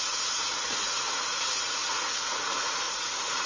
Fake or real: fake